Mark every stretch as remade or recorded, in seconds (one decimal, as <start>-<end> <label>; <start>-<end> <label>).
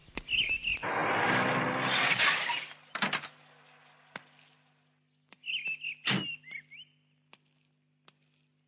0.0-8.7 recorded